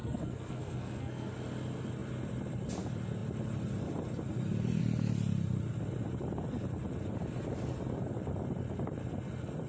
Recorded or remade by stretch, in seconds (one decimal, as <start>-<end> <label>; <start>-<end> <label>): 0.0-1.3 remade; 1.3-9.7 recorded